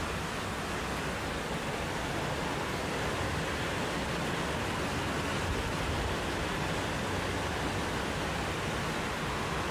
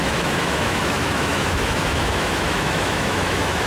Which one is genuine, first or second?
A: first